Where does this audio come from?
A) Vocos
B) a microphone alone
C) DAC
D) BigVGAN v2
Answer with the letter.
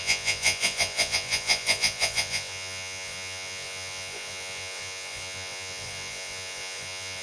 A